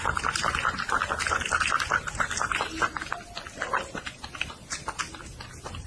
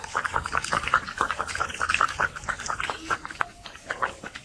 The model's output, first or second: second